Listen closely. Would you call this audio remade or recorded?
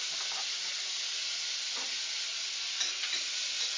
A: recorded